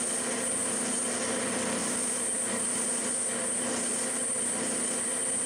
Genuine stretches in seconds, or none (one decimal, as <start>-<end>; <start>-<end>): 0.0-5.5